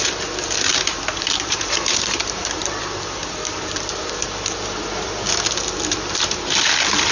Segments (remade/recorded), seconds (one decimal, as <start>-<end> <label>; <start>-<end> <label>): 0.0-0.7 recorded; 0.7-2.8 remade; 2.8-3.2 recorded; 3.2-4.5 remade; 4.5-7.1 recorded